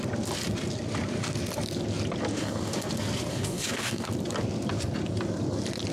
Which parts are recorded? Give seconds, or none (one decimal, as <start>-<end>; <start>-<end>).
0.0-2.3; 2.9-3.3; 4.1-5.9